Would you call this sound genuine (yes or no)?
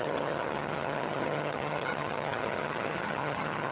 no